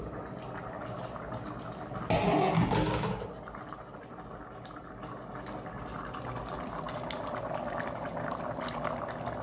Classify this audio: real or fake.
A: real